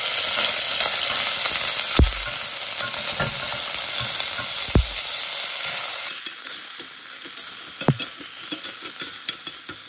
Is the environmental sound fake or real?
real